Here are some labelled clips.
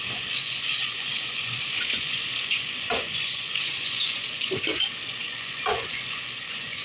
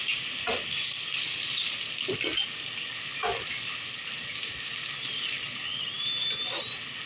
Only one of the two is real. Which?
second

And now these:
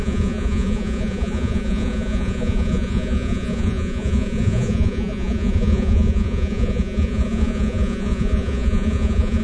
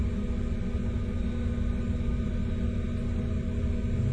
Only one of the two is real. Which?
second